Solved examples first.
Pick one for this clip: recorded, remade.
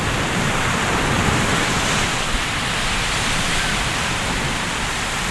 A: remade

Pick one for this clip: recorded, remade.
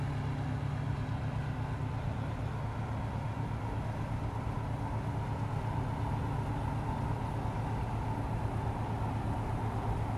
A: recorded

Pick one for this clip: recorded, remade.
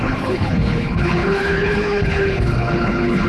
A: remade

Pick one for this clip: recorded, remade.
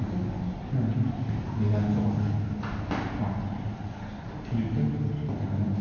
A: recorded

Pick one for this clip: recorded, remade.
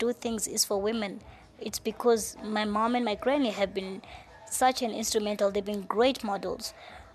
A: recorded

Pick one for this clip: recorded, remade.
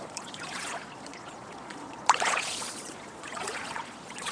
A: remade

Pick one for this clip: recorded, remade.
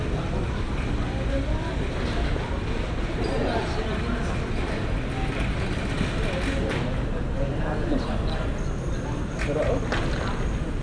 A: recorded